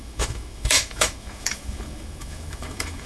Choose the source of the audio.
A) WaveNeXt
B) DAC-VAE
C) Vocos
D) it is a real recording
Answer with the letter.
B